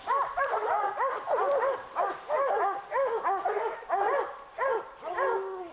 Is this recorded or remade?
recorded